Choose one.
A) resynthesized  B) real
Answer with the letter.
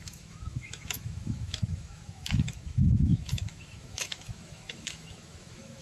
A